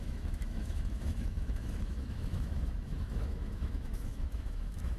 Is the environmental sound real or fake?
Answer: fake